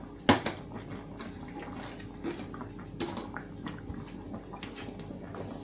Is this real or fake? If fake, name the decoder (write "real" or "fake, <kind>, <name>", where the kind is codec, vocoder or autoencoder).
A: real